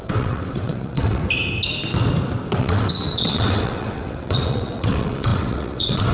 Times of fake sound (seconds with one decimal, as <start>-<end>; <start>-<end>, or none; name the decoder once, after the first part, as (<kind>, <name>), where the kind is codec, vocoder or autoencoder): 0.0-1.2 (vocoder, WaveNeXt); 2.6-6.1